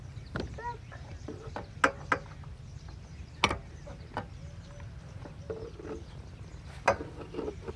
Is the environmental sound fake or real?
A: real